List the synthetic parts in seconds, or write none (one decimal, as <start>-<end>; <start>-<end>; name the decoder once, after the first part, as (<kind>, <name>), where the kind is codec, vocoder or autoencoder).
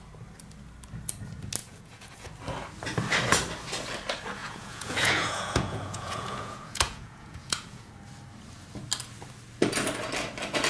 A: 1.6-2.3 (vocoder, Vocos); 4.4-7.9